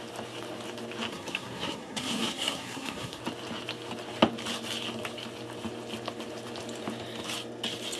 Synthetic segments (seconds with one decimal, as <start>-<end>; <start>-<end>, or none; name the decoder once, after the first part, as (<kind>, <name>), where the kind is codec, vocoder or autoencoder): 1.1-3.2 (codec, SNAC)